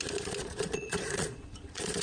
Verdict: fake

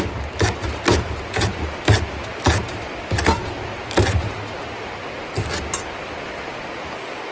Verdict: real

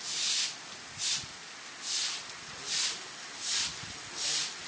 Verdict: real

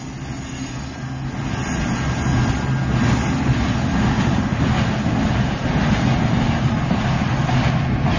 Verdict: real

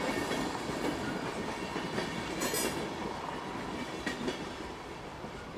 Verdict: real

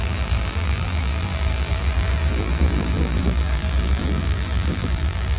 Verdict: fake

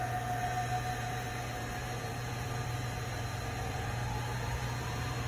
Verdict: fake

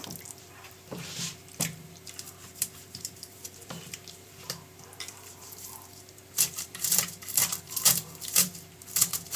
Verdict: fake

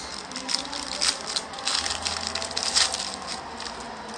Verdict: fake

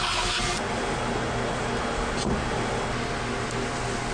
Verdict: real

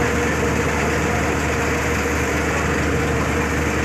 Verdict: real